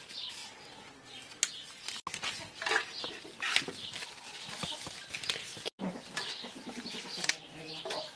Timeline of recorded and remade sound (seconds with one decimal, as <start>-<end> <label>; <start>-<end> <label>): 0.0-8.2 recorded

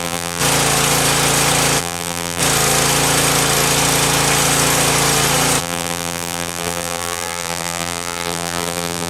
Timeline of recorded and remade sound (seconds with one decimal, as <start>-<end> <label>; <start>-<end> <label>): 0.0-0.4 remade; 0.4-1.8 recorded; 1.8-2.4 remade; 2.4-5.6 recorded; 5.6-9.1 remade

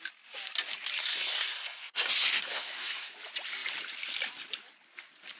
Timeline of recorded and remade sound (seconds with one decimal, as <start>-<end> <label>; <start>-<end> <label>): 0.0-1.0 recorded; 1.0-3.1 remade; 3.1-5.4 recorded

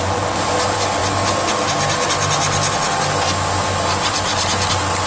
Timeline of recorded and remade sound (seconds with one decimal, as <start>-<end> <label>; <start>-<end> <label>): 0.0-5.1 recorded

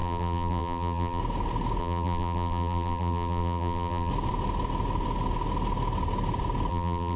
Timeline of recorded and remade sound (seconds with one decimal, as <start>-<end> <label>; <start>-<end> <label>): 0.0-1.2 remade; 1.2-1.8 recorded; 1.8-4.1 remade; 4.1-6.7 recorded; 6.7-7.2 remade